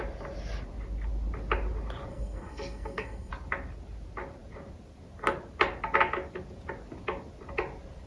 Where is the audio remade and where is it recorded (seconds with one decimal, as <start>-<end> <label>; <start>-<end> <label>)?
0.0-2.1 recorded; 2.1-3.3 remade; 3.3-8.1 recorded